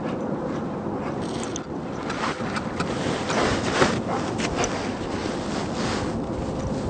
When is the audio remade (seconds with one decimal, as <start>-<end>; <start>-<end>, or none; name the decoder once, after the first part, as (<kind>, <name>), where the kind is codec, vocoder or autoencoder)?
none